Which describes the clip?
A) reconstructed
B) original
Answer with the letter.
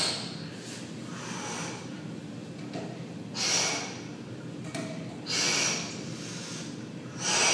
B